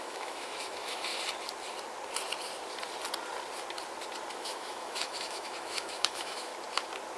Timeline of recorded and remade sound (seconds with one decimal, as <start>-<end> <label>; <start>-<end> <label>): 0.0-1.1 remade; 1.1-4.3 recorded; 4.3-6.5 remade; 6.5-7.2 recorded